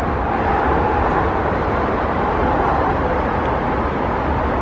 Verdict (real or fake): real